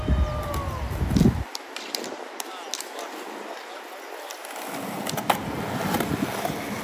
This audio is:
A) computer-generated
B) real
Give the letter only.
B